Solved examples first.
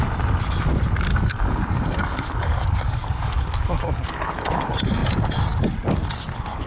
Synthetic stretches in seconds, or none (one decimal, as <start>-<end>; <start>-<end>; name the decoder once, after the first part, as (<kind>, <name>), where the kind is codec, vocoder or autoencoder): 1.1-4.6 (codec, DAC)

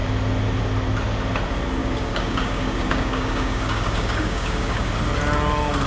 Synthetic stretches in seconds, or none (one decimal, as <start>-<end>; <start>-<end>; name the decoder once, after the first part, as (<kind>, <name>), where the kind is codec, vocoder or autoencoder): 1.8-4.9 (codec, DAC)

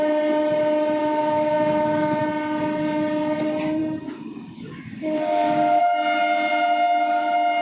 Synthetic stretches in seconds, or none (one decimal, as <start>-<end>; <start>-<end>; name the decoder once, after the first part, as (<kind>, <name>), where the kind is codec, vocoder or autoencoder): 1.0-2.2 (codec, DAC); 3.8-5.8

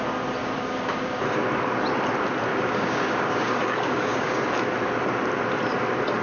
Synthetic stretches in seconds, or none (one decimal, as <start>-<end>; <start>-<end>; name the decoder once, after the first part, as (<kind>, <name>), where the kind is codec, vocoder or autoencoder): 0.4-1.2 (codec, DAC); 2.5-4.4